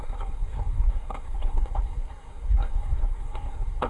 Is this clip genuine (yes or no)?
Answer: no